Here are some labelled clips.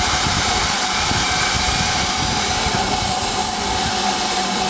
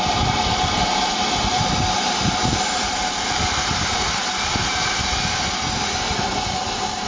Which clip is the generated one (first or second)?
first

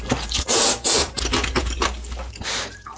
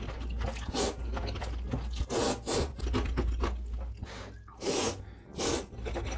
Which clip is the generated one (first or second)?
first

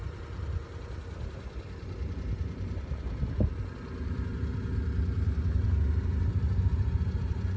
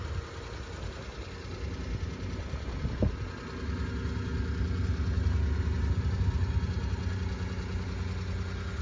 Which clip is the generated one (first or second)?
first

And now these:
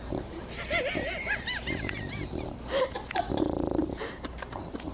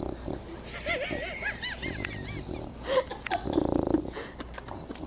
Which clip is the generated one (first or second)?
first